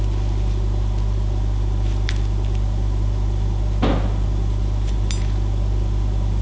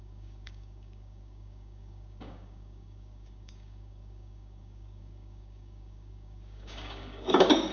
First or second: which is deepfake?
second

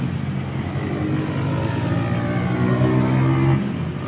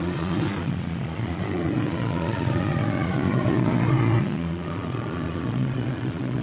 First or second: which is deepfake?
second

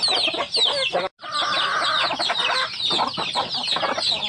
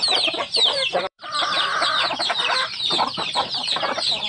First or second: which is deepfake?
second